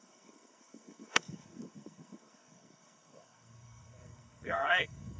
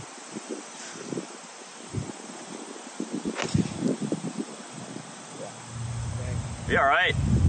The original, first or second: second